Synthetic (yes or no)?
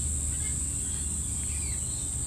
no